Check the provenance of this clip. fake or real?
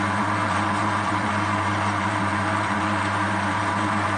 fake